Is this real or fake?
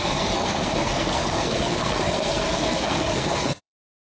fake